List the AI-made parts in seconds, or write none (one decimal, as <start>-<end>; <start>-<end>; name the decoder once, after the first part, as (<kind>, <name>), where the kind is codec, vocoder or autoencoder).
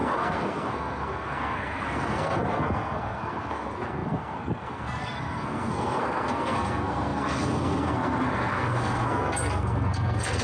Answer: 0.0-10.4 (codec, SNAC)